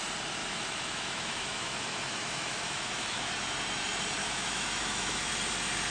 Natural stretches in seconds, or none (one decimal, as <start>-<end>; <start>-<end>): 0.0-0.4; 3.3-4.2; 5.2-5.9